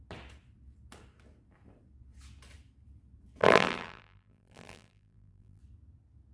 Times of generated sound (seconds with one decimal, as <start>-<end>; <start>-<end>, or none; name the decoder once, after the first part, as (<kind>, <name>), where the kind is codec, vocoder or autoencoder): 3.4-5.6 (vocoder, BigVGAN v2)